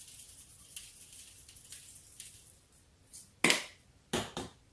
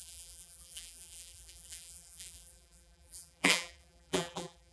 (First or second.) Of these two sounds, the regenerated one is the second